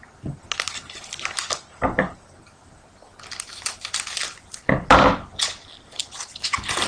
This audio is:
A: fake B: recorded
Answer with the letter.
B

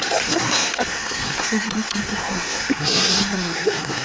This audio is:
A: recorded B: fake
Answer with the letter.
B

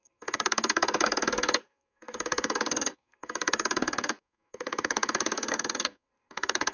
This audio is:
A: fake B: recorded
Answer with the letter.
A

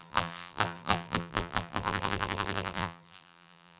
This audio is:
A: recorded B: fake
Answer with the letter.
B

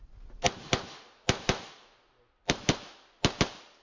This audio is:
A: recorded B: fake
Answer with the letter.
A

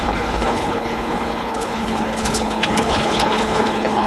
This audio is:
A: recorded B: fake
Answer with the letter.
B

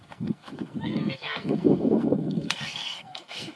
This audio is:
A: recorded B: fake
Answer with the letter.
B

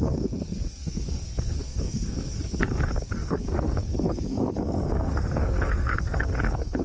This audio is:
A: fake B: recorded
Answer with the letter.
A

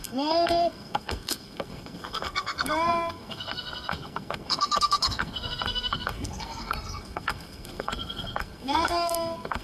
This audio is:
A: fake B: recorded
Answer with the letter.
A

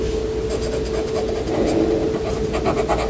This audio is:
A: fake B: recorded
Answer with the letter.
B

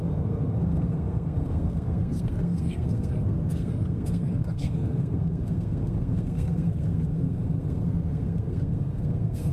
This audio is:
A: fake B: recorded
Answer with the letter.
A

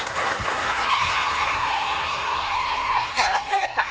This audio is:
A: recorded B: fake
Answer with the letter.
B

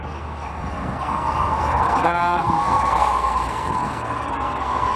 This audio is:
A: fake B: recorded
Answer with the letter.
A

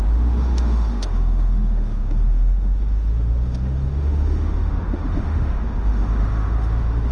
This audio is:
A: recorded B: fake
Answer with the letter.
B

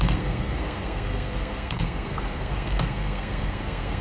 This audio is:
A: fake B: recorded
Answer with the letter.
A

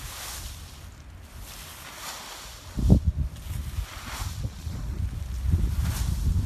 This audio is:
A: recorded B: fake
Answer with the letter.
A